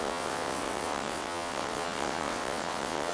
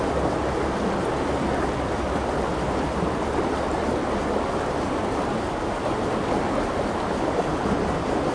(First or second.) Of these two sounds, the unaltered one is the second